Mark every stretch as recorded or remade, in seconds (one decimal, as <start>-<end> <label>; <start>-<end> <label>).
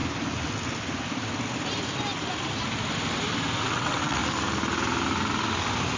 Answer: 0.0-3.6 recorded; 3.6-4.2 remade; 4.2-6.0 recorded